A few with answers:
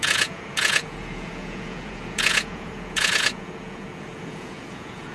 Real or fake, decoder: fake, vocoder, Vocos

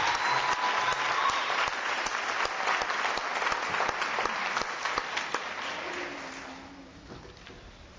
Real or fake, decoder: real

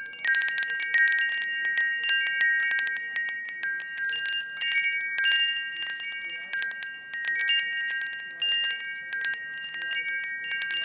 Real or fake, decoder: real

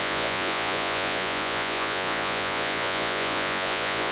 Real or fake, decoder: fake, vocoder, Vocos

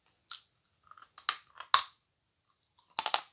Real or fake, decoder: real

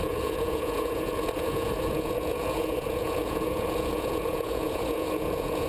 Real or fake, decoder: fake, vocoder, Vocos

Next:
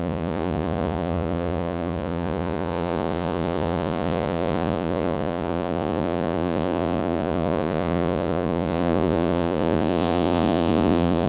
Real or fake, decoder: fake, vocoder, Vocos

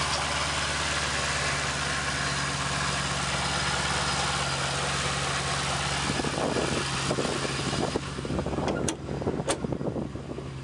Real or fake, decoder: real